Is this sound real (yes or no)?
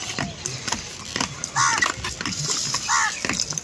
yes